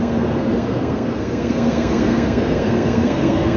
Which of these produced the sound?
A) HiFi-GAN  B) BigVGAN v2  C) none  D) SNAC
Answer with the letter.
D